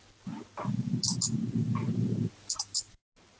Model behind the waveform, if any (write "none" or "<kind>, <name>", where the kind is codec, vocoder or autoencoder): none